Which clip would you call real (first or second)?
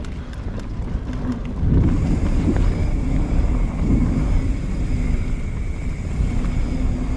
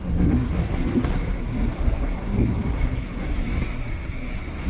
first